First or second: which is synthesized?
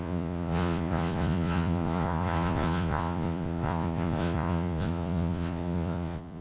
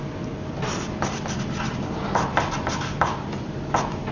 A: first